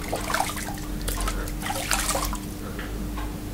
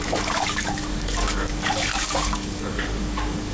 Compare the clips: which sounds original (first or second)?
first